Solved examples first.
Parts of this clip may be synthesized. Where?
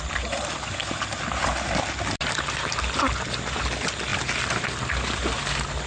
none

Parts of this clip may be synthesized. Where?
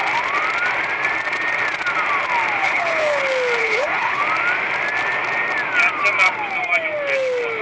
2.6-3.2 (codec, HILCodec); 3.6-4.2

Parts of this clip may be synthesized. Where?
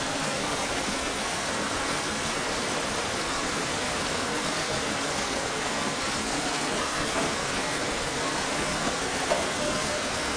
0.0-2.5 (codec, SNAC); 3.2-10.4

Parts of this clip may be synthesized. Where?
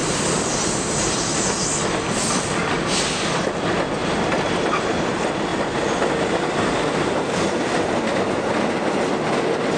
none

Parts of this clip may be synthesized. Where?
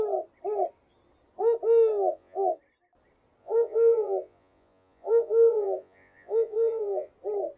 1.9-2.6 (vocoder, Vocos); 3.4-7.1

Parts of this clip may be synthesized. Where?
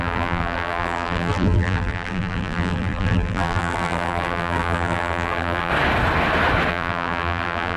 0.0-5.7 (vocoder, BigVGAN v2); 6.7-7.8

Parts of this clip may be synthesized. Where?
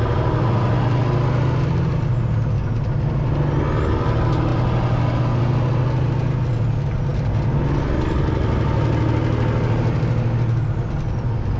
none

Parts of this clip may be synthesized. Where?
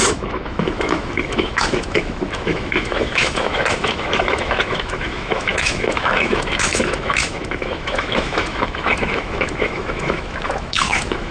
0.0-11.3 (autoencoder, DAC-VAE)